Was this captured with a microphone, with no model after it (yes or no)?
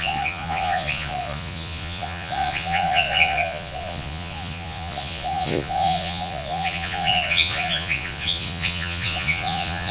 no